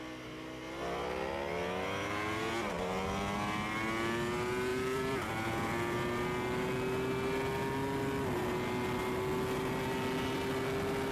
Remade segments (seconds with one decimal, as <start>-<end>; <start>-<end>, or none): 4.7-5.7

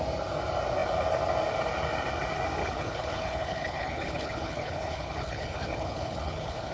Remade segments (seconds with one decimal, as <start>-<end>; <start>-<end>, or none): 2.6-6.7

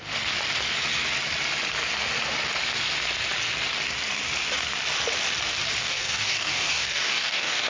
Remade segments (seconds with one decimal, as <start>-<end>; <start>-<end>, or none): 5.8-7.7

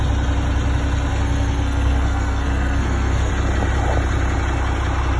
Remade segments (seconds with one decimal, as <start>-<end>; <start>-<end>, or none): 1.1-3.3

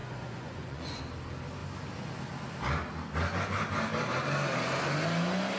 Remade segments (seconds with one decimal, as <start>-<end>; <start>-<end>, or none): 0.0-1.0

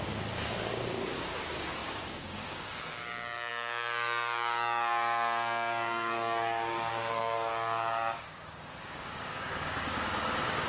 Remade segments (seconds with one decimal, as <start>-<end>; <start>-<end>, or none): 0.0-10.7

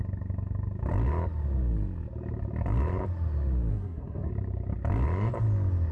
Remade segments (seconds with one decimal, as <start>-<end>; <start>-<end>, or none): 3.7-4.3

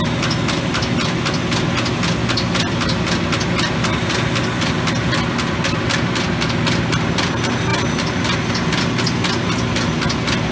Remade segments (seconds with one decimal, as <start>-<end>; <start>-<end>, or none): none